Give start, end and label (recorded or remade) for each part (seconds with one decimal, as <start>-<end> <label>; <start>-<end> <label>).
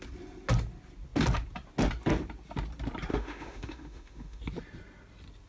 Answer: 0.0-3.1 recorded; 3.1-4.4 remade; 4.4-5.5 recorded